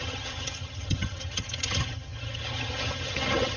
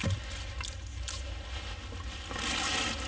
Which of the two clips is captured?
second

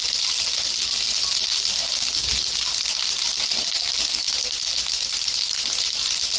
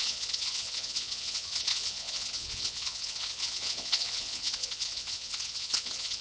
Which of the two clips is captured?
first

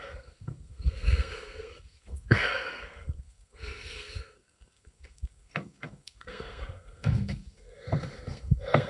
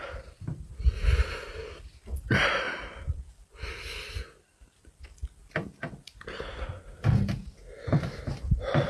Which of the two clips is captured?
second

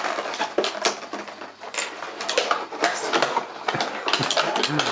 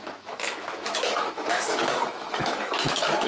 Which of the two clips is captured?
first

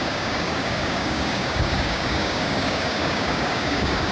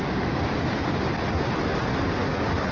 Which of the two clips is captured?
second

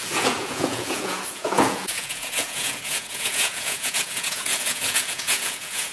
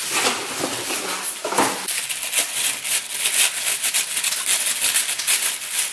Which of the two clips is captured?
second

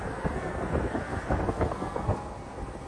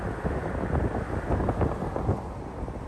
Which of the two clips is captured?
second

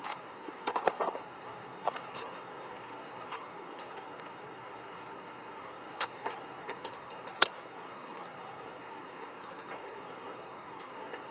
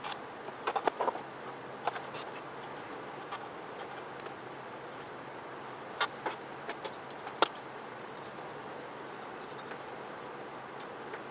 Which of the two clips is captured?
second